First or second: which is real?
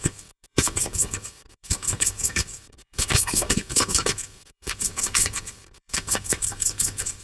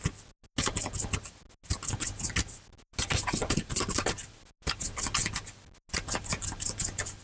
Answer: second